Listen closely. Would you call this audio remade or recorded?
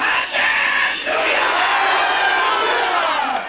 remade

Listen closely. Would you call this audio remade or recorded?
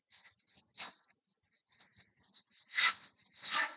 recorded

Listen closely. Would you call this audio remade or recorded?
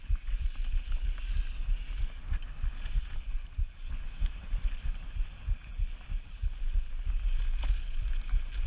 recorded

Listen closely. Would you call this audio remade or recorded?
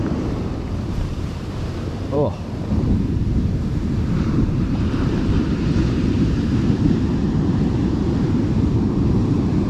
remade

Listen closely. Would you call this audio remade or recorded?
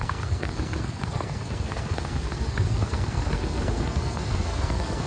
remade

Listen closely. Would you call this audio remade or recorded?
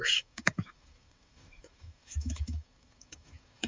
remade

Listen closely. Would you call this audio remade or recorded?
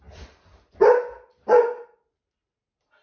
recorded